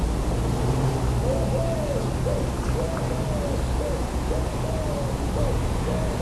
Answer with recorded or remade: recorded